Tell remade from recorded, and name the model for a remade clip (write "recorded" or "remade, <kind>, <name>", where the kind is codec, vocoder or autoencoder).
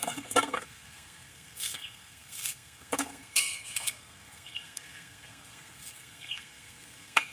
remade, codec, SNAC